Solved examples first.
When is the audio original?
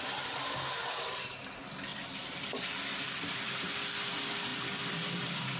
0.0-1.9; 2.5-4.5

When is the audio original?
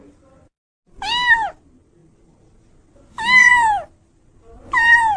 0.0-5.2